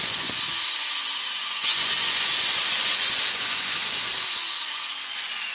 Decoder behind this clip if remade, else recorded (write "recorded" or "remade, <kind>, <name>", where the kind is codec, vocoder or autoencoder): remade, vocoder, Vocos